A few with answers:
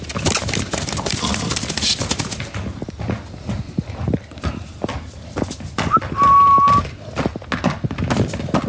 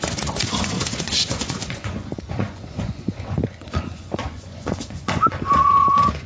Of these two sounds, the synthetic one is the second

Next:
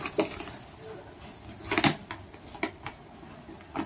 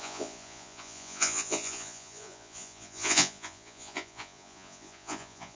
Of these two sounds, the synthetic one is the second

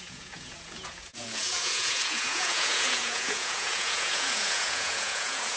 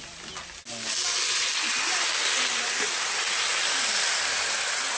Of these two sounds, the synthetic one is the first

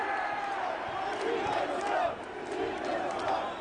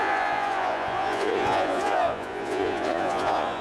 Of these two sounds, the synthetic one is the second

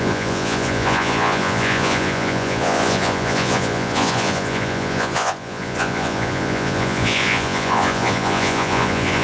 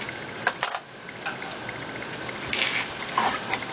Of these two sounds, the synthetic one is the first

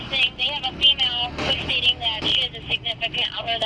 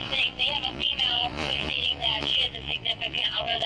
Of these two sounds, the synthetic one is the second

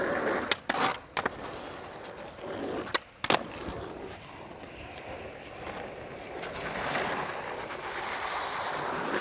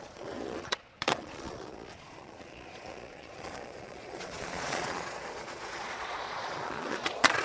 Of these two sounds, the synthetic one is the second